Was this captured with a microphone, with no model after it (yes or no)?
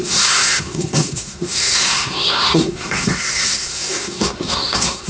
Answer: no